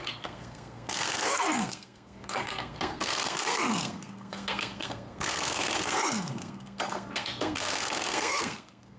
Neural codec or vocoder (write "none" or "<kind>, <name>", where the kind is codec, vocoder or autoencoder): codec, SNAC